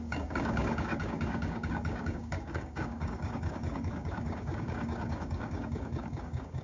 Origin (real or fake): fake